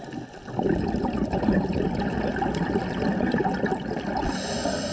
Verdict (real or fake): real